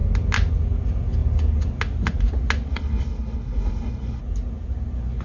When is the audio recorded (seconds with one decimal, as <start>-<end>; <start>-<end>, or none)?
0.0-2.7; 4.2-5.2